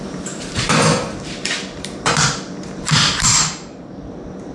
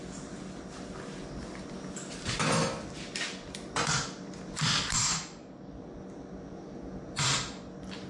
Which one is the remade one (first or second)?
first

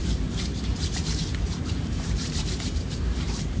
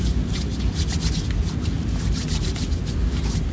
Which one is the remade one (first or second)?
first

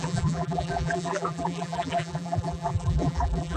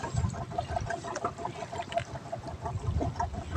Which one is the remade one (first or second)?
first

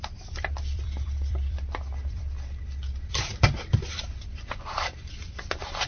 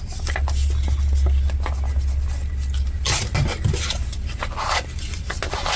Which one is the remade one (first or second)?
first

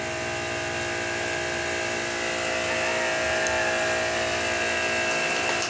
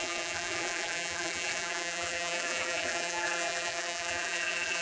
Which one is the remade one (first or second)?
second